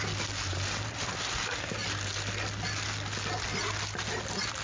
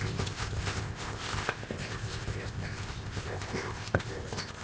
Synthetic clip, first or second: second